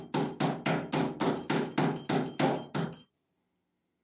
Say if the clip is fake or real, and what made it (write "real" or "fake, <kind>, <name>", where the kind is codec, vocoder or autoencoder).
real